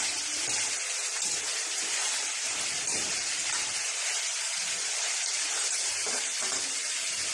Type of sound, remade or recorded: recorded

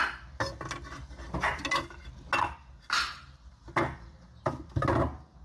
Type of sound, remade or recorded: recorded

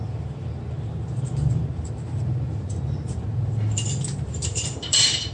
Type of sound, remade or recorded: remade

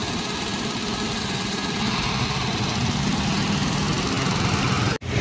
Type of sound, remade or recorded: recorded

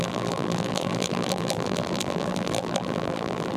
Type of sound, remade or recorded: remade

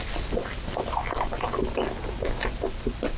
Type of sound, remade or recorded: recorded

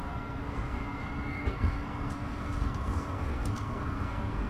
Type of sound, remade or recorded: remade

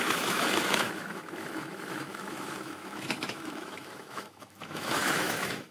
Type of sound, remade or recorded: remade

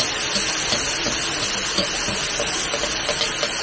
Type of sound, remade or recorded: recorded